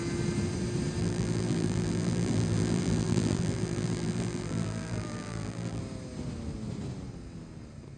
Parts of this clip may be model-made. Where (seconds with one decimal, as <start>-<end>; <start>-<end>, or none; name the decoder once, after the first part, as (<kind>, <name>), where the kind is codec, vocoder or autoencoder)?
1.0-5.8 (vocoder, BigVGAN v2)